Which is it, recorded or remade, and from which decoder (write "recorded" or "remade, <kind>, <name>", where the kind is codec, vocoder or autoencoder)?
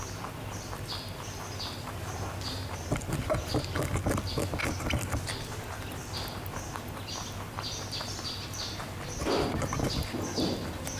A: recorded